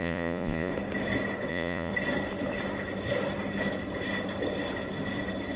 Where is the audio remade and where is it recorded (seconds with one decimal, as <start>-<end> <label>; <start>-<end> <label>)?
0.0-0.7 remade; 0.7-1.5 recorded; 1.5-1.9 remade; 1.9-5.6 recorded